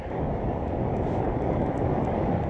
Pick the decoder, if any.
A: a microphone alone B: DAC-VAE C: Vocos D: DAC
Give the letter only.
D